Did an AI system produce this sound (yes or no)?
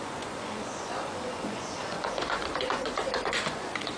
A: yes